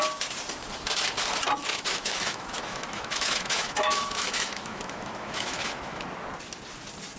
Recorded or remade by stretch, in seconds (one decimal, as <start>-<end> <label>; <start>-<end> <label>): 0.0-1.7 recorded; 1.7-6.0 remade; 6.0-7.2 recorded